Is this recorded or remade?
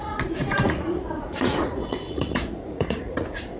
remade